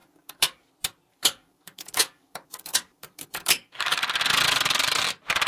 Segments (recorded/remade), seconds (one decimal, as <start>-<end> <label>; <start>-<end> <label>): 0.0-0.7 remade; 0.7-1.1 recorded; 1.1-4.0 remade; 4.0-5.5 recorded